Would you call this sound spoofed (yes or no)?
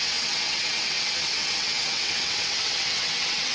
yes